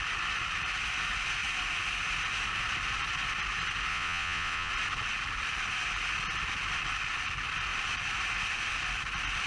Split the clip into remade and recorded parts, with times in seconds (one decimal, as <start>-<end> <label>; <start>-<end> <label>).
0.0-3.9 recorded; 3.9-4.7 remade; 4.7-9.5 recorded